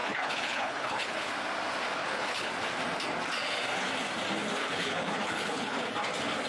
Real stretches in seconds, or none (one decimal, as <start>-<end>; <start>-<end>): 1.3-2.0; 2.5-4.6; 5.9-6.5